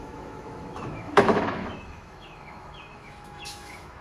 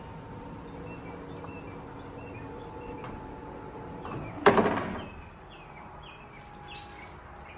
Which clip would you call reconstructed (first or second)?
first